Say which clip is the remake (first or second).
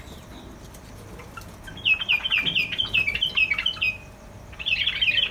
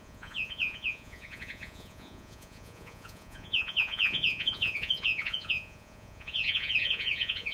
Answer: second